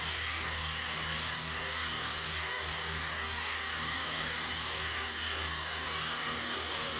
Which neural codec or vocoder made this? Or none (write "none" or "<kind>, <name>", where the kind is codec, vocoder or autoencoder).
codec, DAC